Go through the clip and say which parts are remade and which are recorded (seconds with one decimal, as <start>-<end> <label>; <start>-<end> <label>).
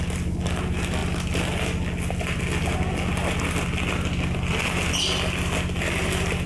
0.0-6.5 recorded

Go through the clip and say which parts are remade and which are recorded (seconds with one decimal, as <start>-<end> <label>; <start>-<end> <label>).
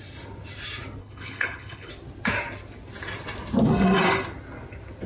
0.0-1.0 recorded; 1.0-1.9 remade; 1.9-5.1 recorded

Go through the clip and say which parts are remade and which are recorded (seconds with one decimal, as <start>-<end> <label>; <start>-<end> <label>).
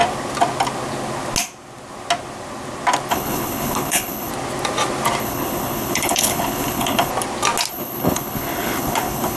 0.0-3.1 recorded; 3.1-4.3 remade; 4.3-5.2 recorded; 5.2-7.1 remade; 7.1-7.7 recorded; 7.7-9.4 remade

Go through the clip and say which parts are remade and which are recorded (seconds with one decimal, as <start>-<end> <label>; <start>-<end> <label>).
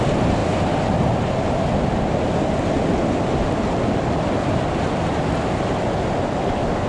0.0-6.9 recorded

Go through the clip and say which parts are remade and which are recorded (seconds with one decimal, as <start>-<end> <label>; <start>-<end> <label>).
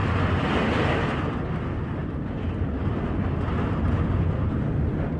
0.0-5.2 recorded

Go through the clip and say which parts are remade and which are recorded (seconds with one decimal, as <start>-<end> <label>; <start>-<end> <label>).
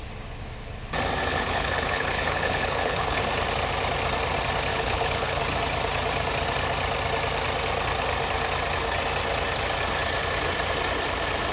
0.0-1.3 recorded; 1.3-3.2 remade; 3.2-4.7 recorded; 4.7-5.4 remade; 5.4-11.5 recorded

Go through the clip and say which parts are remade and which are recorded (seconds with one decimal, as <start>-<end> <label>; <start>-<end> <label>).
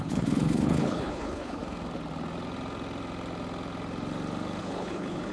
0.0-1.6 remade; 1.6-4.6 recorded; 4.6-5.3 remade